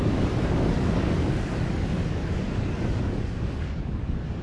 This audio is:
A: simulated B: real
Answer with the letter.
A